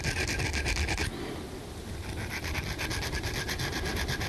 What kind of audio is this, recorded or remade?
recorded